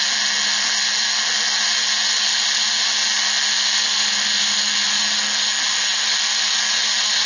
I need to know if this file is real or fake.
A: real